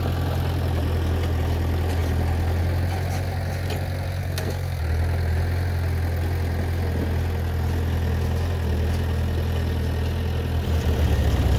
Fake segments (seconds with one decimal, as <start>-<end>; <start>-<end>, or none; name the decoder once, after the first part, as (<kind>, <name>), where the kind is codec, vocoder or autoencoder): 4.2-4.8 (codec, SNAC)